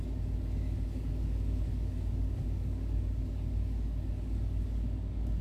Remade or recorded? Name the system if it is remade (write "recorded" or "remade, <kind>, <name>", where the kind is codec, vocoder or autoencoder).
remade, codec, DAC